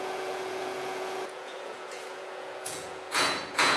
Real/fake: fake